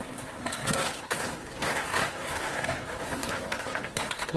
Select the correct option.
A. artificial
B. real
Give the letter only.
A